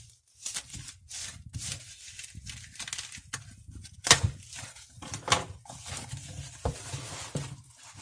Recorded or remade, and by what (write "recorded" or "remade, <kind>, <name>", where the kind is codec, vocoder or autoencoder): recorded